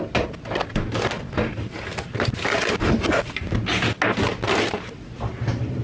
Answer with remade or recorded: recorded